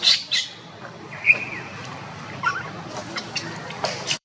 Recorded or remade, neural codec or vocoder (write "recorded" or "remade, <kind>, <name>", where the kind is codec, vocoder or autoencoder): remade, vocoder, BigVGAN v2